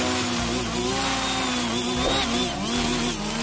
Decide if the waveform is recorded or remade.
recorded